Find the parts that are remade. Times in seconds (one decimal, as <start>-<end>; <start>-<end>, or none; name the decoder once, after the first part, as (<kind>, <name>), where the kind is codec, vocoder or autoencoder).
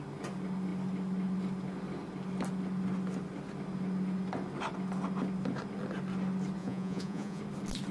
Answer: 6.6-7.4 (vocoder, Vocos)